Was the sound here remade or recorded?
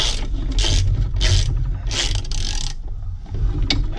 recorded